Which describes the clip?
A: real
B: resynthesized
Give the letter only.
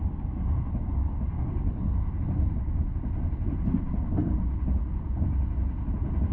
A